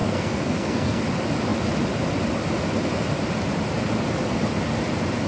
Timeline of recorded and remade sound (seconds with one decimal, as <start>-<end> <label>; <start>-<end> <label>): 0.0-1.0 remade; 1.0-5.3 recorded